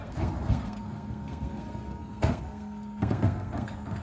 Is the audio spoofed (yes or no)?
yes